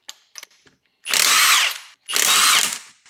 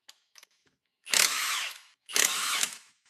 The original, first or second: first